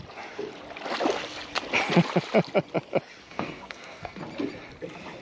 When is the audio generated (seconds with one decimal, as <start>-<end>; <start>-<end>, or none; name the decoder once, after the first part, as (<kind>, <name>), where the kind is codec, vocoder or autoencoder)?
3.2-4.2 (codec, SNAC)